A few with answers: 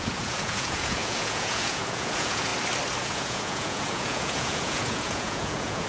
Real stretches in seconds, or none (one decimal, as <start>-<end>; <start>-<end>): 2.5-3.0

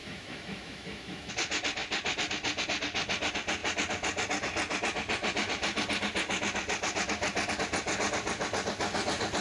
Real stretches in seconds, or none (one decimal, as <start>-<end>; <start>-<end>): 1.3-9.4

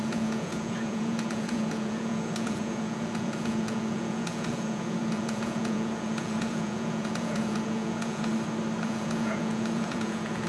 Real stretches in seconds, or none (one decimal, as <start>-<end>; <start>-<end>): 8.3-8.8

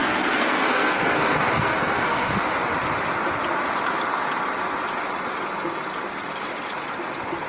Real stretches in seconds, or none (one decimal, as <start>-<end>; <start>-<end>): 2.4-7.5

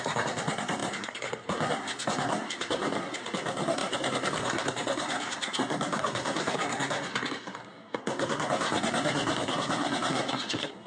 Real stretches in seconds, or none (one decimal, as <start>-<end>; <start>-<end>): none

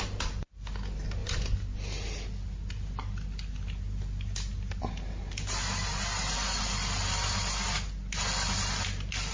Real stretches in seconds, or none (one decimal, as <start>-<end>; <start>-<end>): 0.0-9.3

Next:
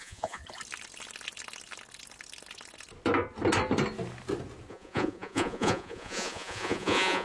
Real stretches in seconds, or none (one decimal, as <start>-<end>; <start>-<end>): 0.4-4.7